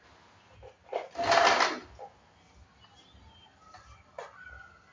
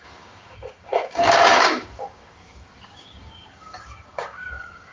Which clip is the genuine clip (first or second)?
first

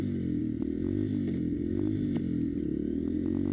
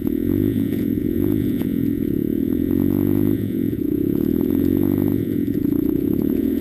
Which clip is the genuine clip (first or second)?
first